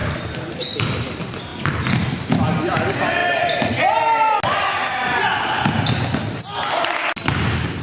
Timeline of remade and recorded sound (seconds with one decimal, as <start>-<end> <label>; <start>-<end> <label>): 0.0-0.6 remade; 0.6-7.8 recorded

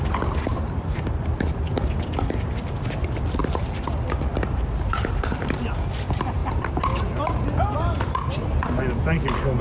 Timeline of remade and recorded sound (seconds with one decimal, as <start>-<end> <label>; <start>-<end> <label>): 0.0-0.5 recorded; 0.5-1.1 remade; 1.1-3.4 recorded; 3.4-3.9 remade; 3.9-4.3 recorded; 4.3-5.6 remade; 5.6-6.4 recorded; 6.4-8.3 remade; 8.3-9.6 recorded